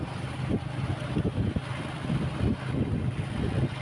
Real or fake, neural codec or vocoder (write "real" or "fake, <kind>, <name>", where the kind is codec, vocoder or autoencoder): real